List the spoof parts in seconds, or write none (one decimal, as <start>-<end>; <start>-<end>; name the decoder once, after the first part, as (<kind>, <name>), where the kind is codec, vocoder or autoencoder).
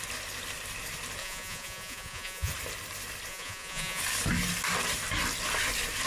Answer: 1.2-2.5 (vocoder, Vocos); 3.3-4.0